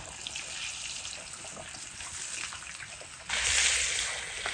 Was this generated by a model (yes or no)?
no